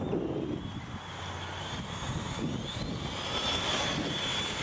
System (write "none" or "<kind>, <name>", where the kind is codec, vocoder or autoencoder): none